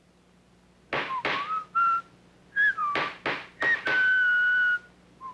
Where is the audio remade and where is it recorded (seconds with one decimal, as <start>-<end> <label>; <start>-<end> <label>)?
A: 0.0-5.3 recorded